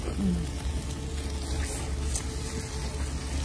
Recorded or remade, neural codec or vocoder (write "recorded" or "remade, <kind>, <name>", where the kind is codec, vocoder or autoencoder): recorded